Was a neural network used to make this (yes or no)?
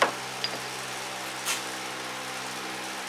no